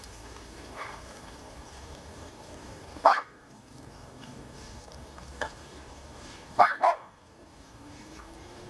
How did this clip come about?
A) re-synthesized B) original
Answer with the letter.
A